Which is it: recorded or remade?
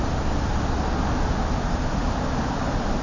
recorded